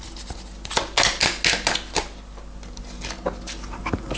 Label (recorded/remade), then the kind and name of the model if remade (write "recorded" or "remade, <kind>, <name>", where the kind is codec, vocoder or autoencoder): recorded